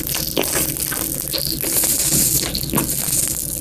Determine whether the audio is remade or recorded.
recorded